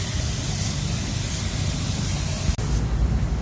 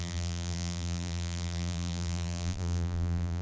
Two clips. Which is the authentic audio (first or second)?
first